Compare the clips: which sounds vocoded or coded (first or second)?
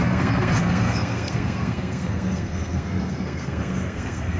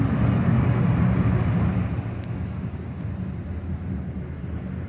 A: first